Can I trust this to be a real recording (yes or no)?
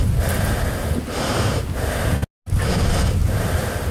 yes